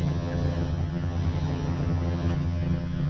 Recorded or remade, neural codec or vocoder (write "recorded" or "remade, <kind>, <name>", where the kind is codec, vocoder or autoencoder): remade, vocoder, HiFi-GAN